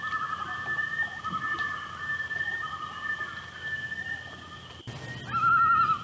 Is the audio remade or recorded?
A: recorded